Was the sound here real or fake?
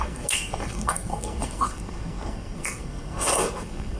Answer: fake